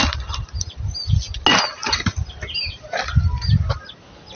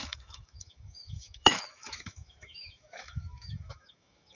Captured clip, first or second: first